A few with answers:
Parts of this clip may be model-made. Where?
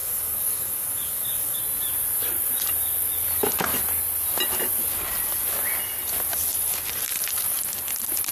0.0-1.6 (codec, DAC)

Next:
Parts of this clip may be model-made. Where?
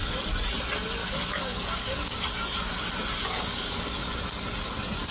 1.0-2.2 (codec, DAC); 3.2-4.0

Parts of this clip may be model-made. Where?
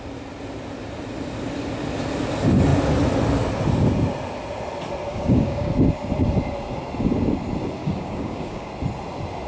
5.1-5.7 (codec, DAC); 7.8-8.7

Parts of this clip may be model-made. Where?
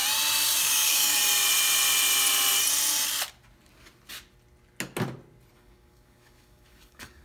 0.6-1.2 (codec, DAC); 5.5-7.2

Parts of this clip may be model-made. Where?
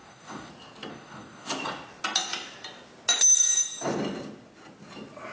0.0-0.5 (codec, DAC); 0.9-1.5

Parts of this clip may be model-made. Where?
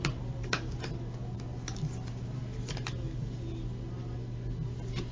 none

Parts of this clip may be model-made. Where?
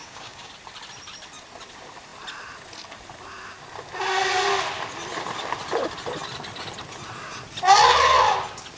0.0-0.5 (codec, DAC)